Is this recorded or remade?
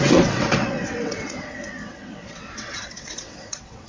remade